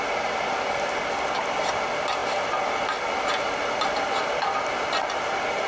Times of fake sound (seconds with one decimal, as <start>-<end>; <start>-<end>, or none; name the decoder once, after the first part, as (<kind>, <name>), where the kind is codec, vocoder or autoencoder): none